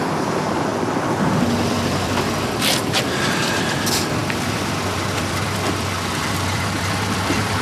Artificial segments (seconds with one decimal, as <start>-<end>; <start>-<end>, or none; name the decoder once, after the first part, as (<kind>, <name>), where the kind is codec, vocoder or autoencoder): 0.0-0.7 (vocoder, BigVGAN v2); 1.6-7.6